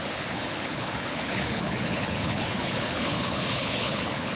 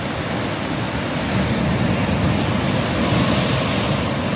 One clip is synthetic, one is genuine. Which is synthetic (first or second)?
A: first